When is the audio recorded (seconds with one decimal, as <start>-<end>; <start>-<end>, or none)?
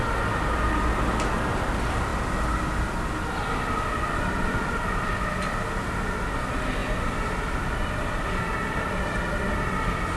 0.0-10.2